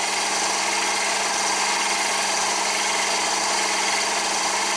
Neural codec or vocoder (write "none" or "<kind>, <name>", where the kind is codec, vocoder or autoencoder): none